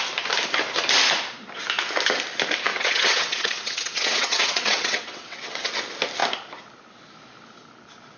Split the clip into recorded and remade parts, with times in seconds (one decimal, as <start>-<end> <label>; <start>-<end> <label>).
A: 0.0-2.7 recorded; 2.7-5.7 remade; 5.7-8.2 recorded